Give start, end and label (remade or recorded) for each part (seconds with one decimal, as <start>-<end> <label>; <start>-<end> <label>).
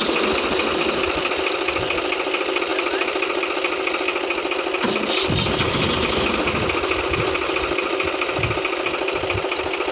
0.0-9.9 recorded